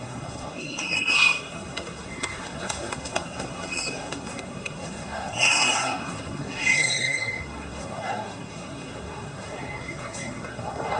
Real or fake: fake